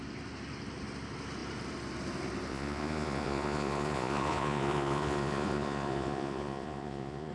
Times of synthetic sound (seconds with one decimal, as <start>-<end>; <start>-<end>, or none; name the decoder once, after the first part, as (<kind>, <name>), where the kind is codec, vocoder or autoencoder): 2.5-7.3 (vocoder, Vocos)